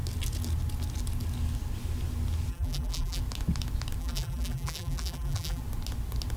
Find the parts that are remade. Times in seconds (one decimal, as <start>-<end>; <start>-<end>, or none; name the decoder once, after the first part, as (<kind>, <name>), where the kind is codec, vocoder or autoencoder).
2.5-3.2 (vocoder, BigVGAN v2); 4.0-5.6